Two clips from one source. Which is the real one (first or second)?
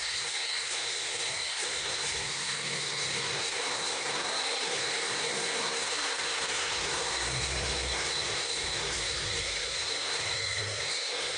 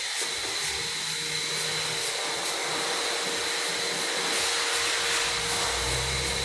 second